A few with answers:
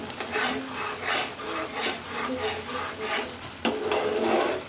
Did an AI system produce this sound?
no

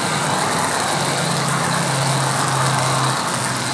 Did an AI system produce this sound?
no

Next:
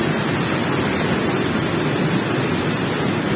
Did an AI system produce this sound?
no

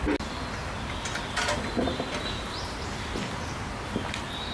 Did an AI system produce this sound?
no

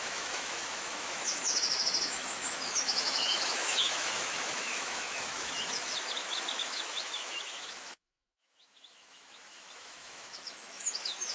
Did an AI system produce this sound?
yes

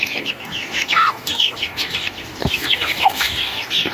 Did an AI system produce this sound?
yes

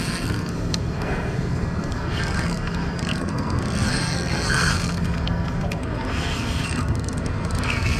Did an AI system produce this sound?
yes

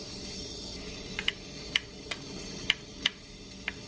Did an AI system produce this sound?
no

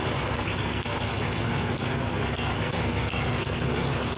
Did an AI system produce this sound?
yes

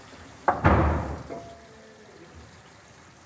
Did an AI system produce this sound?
no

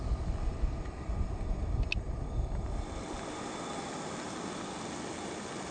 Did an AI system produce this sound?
no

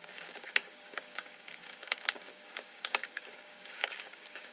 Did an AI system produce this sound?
yes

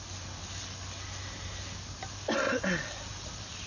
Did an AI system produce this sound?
no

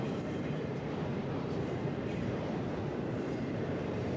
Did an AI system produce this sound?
yes